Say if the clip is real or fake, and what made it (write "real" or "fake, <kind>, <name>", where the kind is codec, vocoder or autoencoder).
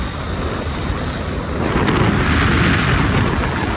real